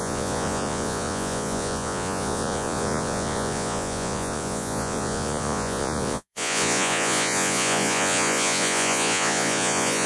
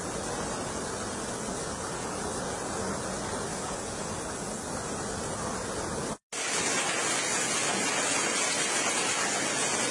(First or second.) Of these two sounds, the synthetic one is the first